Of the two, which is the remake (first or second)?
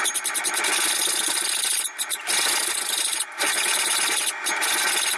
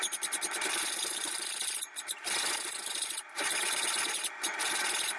second